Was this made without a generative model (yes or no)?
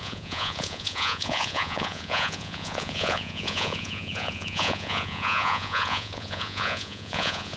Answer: no